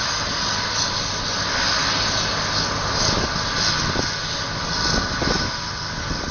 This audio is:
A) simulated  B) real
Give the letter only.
B